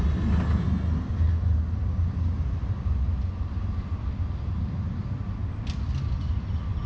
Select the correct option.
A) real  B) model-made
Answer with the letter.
A